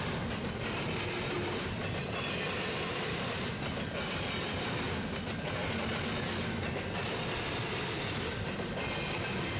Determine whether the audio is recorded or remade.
recorded